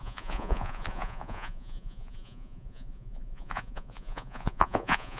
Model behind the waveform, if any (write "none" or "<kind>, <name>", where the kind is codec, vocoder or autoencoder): vocoder, Vocos